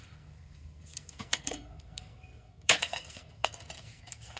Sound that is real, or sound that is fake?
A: fake